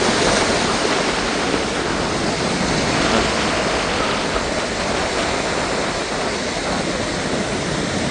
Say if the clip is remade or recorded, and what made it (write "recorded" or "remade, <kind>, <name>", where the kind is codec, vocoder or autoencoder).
recorded